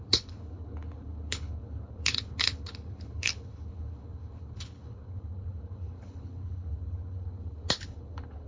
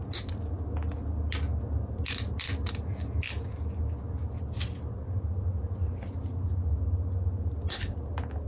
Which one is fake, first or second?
first